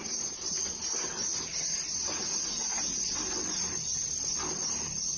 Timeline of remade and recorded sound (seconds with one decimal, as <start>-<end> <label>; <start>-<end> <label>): 0.0-5.2 recorded